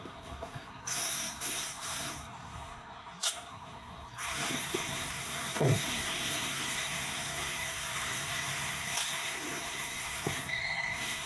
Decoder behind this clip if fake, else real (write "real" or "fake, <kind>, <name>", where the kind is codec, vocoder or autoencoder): fake, codec, SNAC